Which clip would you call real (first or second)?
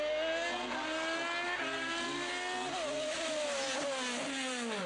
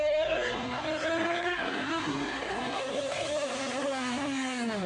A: first